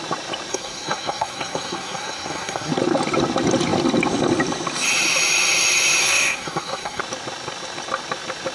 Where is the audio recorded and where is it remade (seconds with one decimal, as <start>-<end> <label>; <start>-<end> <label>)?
0.0-0.5 recorded; 0.5-2.7 remade; 2.7-6.0 recorded; 6.0-7.0 remade; 7.0-8.5 recorded